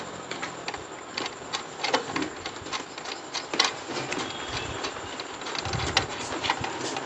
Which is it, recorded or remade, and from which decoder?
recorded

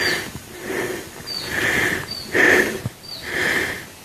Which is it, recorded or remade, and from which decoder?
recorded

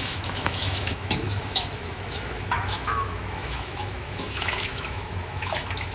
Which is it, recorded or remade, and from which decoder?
remade, autoencoder, DAC-VAE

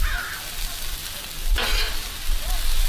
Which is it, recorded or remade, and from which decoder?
recorded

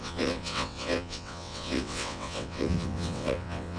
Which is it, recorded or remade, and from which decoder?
remade, vocoder, WaveNeXt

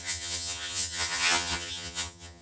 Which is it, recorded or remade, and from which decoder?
remade, vocoder, HiFi-GAN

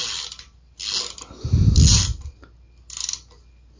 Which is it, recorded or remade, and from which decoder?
recorded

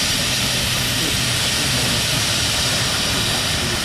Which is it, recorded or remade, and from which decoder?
recorded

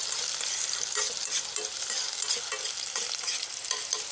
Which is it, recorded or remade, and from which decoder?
recorded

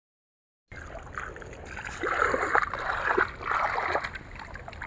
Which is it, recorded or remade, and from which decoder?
recorded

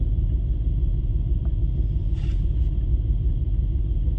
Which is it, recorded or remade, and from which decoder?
remade, vocoder, BigVGAN v2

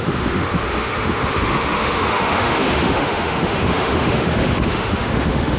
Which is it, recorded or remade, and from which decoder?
remade, autoencoder, DAC-VAE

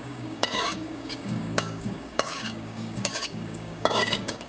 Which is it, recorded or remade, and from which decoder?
remade, codec, DAC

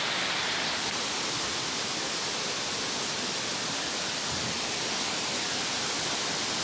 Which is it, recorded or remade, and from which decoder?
recorded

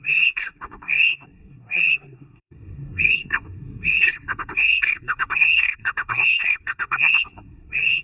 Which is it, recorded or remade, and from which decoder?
remade, codec, SNAC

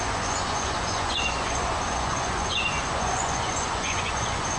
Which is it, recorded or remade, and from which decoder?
remade, vocoder, Vocos